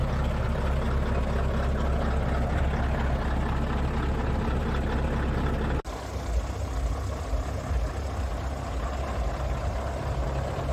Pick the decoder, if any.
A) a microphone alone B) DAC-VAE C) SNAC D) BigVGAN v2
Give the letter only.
A